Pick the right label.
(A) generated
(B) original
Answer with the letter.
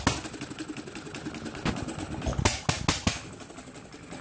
B